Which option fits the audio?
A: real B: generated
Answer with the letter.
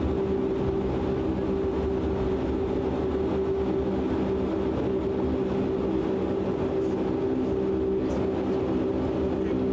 A